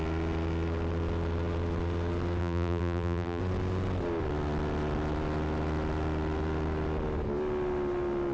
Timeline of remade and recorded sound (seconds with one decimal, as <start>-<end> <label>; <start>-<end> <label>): 0.0-2.4 recorded; 2.4-3.4 remade; 3.4-8.3 recorded